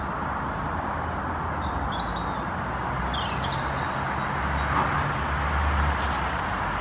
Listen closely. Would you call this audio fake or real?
real